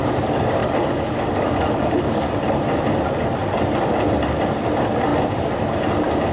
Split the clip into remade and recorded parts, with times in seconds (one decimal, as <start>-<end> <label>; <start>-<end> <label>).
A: 0.0-0.6 recorded; 0.6-2.3 remade; 2.3-6.3 recorded